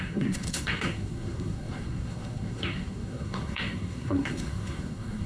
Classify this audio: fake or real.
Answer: fake